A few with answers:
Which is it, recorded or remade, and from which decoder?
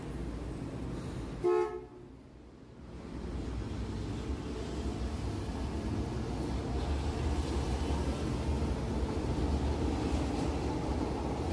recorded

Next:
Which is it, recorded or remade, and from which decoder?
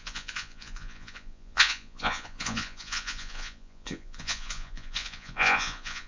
remade, vocoder, Vocos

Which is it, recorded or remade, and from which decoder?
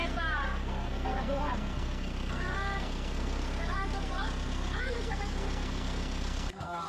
remade, codec, SNAC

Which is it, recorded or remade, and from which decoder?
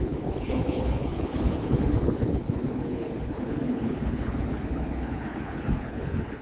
remade, codec, HILCodec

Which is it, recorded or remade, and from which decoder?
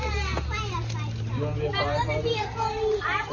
recorded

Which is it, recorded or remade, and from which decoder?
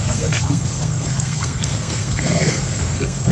remade, codec, SNAC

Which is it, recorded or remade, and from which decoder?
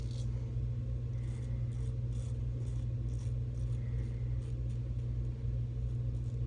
recorded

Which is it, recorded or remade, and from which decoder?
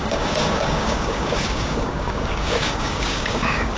remade, codec, DAC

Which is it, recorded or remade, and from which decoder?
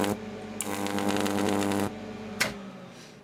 recorded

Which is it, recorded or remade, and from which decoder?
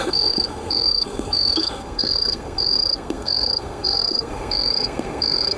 remade, codec, SNAC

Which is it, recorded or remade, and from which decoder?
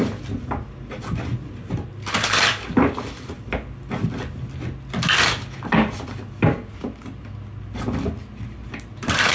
recorded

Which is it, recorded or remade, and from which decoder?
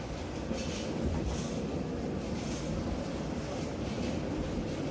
recorded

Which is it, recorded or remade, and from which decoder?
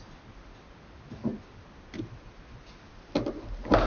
recorded